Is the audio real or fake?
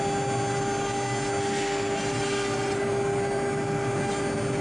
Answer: real